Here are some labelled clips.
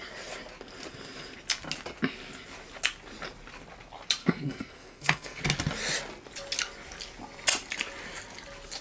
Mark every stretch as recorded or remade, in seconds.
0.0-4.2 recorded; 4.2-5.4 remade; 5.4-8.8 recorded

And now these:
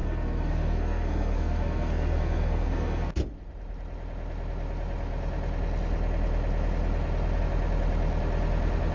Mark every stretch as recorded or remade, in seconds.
0.0-3.1 remade; 3.1-8.9 recorded